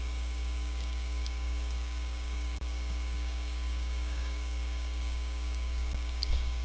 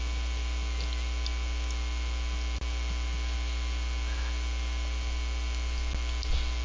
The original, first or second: second